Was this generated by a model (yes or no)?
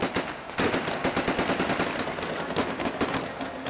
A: no